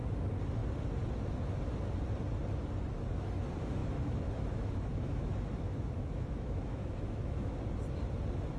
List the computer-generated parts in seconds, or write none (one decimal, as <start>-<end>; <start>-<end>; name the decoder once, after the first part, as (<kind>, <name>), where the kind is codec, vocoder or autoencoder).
3.8-7.6 (autoencoder, DAC-VAE)